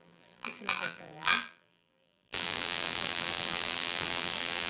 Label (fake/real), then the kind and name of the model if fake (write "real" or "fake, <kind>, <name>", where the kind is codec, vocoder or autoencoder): fake, vocoder, BigVGAN v2